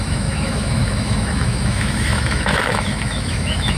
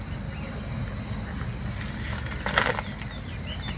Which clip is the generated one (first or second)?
first